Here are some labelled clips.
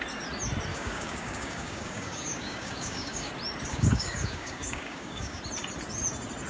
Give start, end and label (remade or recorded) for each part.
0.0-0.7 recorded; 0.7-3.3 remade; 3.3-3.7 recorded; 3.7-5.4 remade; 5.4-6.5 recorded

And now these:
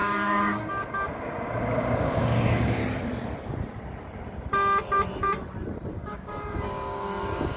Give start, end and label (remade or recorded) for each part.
0.0-2.8 remade; 2.8-5.9 recorded; 5.9-7.6 remade

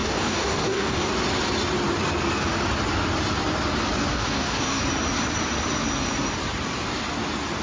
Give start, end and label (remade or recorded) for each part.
0.0-1.1 remade; 1.1-4.1 recorded; 4.1-4.8 remade; 4.8-7.6 recorded

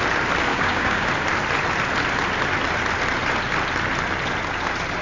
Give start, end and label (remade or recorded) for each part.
0.0-0.5 recorded; 0.5-1.1 remade; 1.1-5.0 recorded

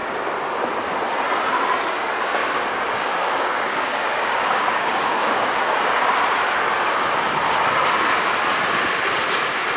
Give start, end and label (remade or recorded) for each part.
0.0-2.4 recorded; 2.4-5.4 remade; 5.4-9.8 recorded